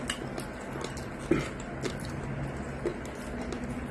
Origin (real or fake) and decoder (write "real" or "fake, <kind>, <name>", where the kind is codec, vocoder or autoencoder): real